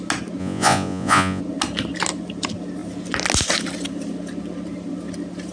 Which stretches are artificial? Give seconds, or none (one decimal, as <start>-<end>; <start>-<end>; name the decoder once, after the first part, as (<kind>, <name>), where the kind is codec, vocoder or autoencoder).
0.4-1.4 (vocoder, Vocos)